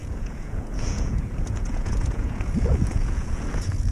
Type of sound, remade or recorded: remade